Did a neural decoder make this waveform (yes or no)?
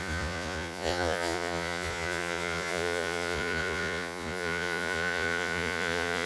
yes